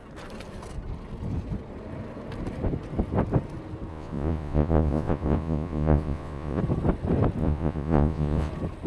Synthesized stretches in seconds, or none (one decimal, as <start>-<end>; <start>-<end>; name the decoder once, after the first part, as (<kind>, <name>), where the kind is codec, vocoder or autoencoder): 3.9-6.6 (vocoder, Vocos); 7.4-8.5

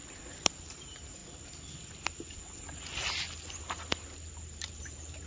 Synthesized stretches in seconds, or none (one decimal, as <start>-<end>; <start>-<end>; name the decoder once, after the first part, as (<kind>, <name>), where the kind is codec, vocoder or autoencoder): 0.5-1.2 (vocoder, BigVGAN v2); 4.4-5.3

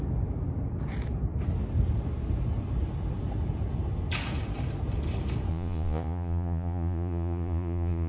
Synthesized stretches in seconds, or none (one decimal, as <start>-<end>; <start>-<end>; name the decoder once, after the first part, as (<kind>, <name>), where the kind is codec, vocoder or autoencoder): 5.5-8.1 (vocoder, Vocos)

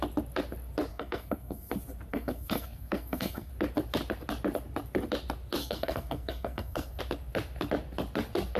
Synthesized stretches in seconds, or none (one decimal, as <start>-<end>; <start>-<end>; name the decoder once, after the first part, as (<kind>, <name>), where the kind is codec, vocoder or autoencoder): 0.9-1.7 (codec, SNAC); 2.1-3.5; 5.6-7.0

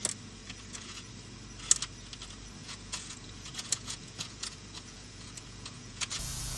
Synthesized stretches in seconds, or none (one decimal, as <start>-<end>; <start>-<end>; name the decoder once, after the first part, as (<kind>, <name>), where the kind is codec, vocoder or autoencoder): 0.4-1.1 (vocoder, Vocos); 2.6-6.6

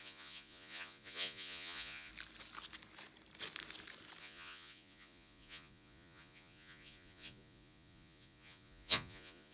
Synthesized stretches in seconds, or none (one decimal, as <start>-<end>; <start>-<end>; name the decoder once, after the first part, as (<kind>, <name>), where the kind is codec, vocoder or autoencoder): 0.0-2.1 (vocoder, Vocos); 4.2-9.5

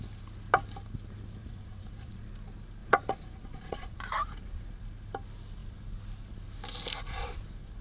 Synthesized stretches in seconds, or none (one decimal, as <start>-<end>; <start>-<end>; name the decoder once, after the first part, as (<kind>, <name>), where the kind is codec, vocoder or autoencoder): 1.4-2.3 (vocoder, Vocos); 2.8-4.0

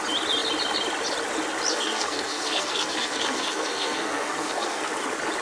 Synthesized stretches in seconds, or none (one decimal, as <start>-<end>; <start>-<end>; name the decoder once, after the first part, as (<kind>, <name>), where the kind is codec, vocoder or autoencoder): 1.7-4.9 (codec, SNAC)